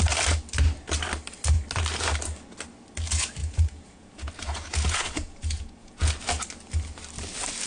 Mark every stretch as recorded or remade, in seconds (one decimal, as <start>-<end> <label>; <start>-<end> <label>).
0.0-3.4 recorded; 3.4-6.1 remade; 6.1-7.7 recorded